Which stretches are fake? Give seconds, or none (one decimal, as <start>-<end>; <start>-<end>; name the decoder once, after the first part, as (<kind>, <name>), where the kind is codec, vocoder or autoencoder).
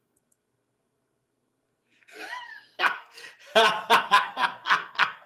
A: 0.0-2.2 (codec, SNAC); 2.8-3.2; 4.0-5.3